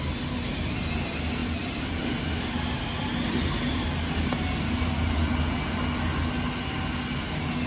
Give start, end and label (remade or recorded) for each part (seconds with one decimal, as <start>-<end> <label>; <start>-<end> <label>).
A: 0.0-1.4 recorded; 1.4-2.4 remade; 2.4-3.0 recorded; 3.0-3.7 remade; 3.7-7.7 recorded